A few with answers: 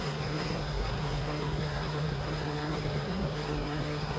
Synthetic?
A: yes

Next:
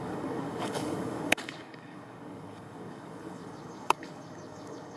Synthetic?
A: yes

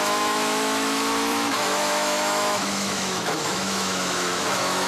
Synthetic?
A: yes